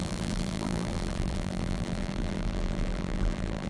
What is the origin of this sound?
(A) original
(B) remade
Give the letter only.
B